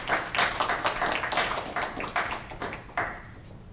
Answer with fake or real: real